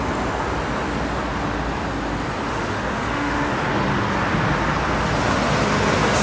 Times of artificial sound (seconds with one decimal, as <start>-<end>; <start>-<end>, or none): 2.5-3.6